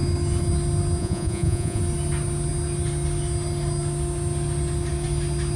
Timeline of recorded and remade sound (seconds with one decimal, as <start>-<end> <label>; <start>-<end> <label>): 0.0-1.0 recorded; 1.0-1.8 remade; 1.8-5.6 recorded